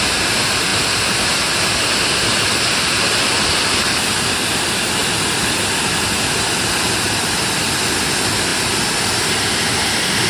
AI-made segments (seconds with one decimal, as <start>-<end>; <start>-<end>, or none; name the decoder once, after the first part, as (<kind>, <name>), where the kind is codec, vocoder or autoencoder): none